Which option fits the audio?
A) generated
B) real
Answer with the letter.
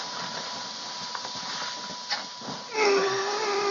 B